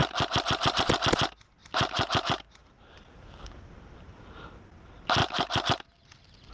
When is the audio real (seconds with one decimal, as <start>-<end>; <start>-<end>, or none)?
0.8-1.6; 4.3-5.2